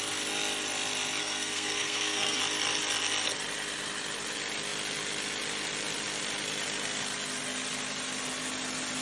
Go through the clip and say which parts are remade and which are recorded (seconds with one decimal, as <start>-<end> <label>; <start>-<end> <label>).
0.0-1.2 recorded; 1.2-2.4 remade; 2.4-9.0 recorded